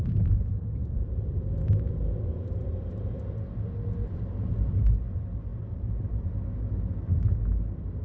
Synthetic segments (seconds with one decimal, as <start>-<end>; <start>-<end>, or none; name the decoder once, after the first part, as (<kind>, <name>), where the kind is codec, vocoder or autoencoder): 0.8-1.6 (vocoder, BigVGAN v2); 2.3-3.2; 5.5-6.2